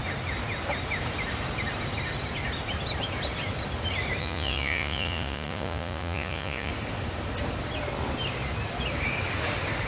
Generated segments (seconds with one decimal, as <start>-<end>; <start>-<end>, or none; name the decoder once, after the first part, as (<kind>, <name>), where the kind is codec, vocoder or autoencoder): 4.2-6.7 (vocoder, Vocos)